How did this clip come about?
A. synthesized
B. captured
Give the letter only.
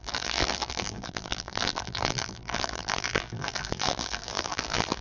A